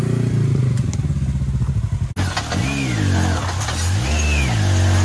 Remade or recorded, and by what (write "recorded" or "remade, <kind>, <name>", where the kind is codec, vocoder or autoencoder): recorded